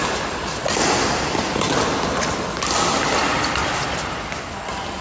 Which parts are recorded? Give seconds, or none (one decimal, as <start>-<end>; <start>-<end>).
0.0-5.0